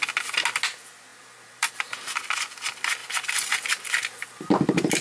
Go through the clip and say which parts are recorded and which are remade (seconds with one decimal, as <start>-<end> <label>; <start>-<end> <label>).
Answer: 0.0-1.1 recorded; 1.1-1.7 remade; 1.7-3.0 recorded; 3.0-3.5 remade; 3.5-5.0 recorded